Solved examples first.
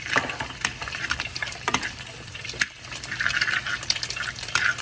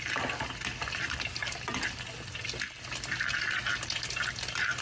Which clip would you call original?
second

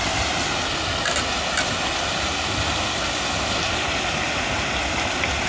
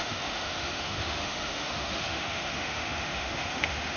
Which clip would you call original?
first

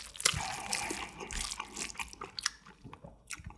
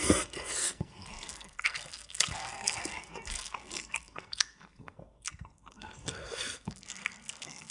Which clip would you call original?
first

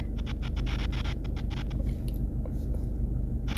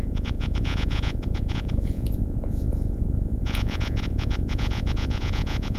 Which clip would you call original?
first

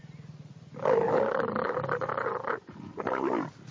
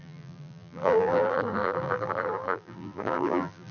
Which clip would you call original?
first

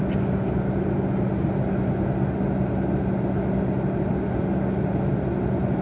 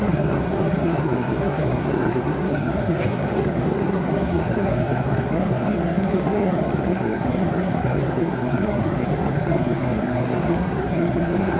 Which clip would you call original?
first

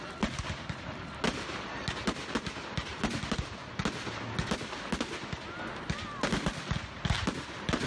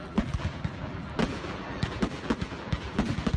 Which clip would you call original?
first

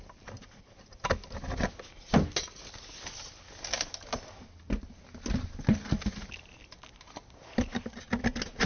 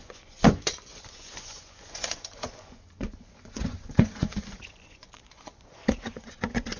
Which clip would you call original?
first